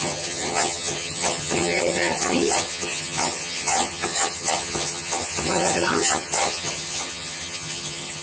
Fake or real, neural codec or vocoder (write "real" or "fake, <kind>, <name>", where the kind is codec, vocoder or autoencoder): fake, vocoder, HiFi-GAN